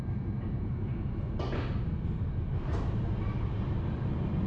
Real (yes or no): yes